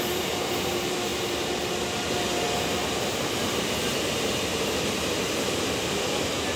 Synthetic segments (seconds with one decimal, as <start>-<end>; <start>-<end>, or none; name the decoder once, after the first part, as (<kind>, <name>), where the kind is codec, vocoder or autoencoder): 0.0-1.1 (vocoder, BigVGAN v2); 2.8-6.6